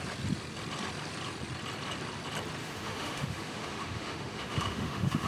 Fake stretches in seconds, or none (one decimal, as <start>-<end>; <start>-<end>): 2.6-5.3